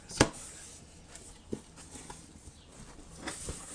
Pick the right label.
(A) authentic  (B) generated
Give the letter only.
A